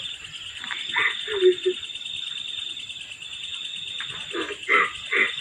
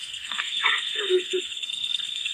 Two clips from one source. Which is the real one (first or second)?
first